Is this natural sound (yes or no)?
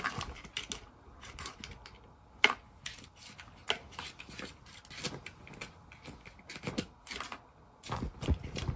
yes